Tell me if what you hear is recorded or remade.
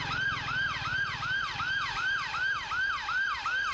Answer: recorded